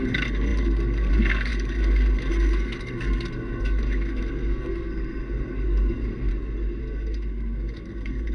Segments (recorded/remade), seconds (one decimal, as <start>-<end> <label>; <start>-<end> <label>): 0.0-6.3 remade; 6.3-6.8 recorded; 6.8-8.3 remade